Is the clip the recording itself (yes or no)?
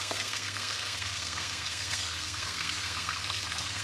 no